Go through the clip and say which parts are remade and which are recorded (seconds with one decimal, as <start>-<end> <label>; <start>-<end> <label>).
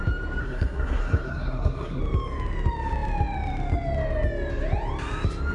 0.0-0.4 recorded; 0.4-2.0 remade; 2.0-5.5 recorded